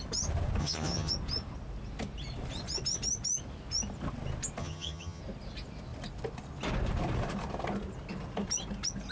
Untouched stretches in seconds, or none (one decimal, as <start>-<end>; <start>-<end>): 0.0-0.6; 1.1-4.6; 5.2-9.1